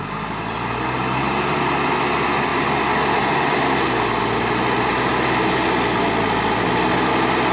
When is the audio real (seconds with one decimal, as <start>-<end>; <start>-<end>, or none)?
0.0-7.5